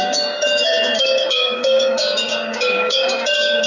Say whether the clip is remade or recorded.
remade